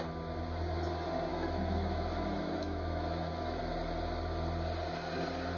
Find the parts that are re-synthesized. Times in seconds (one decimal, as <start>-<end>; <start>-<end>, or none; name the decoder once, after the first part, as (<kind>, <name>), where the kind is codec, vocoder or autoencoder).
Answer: 1.3-3.6 (autoencoder, DAC-VAE)

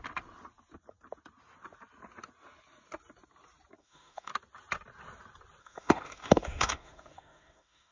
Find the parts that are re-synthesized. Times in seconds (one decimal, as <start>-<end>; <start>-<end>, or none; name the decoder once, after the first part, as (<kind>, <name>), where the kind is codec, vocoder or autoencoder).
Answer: 3.8-4.3 (autoencoder, DAC-VAE); 5.6-7.9

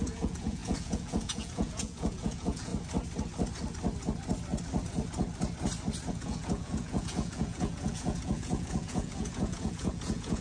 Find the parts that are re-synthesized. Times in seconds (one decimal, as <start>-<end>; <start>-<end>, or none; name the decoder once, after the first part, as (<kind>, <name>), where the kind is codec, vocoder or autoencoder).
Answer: 0.0-2.7 (vocoder, Vocos); 6.1-10.4

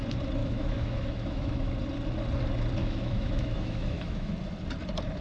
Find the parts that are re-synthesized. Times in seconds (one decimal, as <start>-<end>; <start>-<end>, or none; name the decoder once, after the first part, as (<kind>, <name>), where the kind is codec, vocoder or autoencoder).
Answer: 0.4-1.7 (autoencoder, DAC-VAE); 2.8-4.3

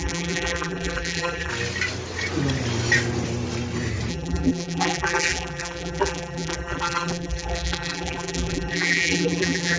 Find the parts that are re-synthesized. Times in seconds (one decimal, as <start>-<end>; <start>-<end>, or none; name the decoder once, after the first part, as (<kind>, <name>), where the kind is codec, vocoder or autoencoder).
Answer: 0.0-1.5 (vocoder, BigVGAN v2); 4.1-9.8

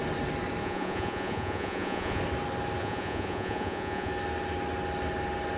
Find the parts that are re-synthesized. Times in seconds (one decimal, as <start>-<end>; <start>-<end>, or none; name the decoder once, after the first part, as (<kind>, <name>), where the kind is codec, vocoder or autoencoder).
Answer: 0.6-2.2 (vocoder, Vocos); 2.8-4.1

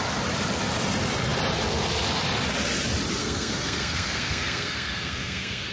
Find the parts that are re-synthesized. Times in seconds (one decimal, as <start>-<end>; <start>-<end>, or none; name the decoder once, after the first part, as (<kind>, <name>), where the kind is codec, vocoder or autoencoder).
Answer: 3.2-5.7 (codec, SNAC)

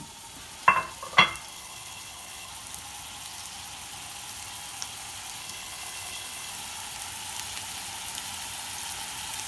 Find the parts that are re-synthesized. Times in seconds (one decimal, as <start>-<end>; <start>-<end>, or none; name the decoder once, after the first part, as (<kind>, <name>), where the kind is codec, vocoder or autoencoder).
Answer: 1.5-2.5 (codec, HILCodec); 5.4-6.5